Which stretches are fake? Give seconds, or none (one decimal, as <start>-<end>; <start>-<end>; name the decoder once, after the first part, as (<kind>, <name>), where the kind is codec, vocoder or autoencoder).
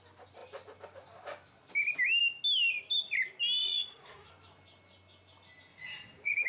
3.6-4.3 (vocoder, Vocos); 5.7-6.5